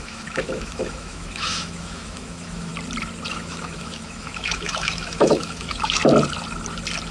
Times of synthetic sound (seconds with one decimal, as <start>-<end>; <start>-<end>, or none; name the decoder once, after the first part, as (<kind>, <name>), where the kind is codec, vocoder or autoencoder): 0.0-2.7 (autoencoder, DAC-VAE); 3.3-6.0